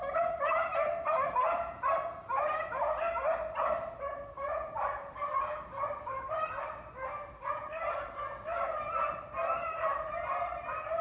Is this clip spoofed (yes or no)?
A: yes